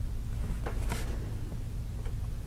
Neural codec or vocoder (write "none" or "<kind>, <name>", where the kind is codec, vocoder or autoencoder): none